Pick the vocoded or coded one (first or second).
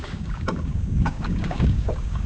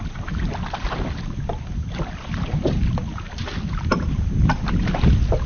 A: first